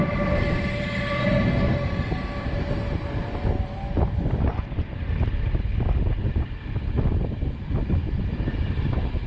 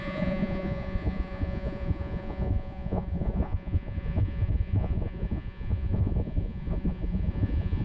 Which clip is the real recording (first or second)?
first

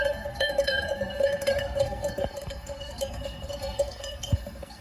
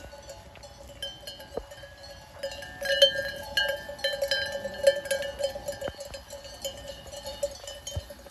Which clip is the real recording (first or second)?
second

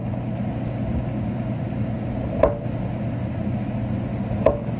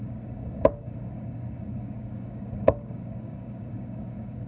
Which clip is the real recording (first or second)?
first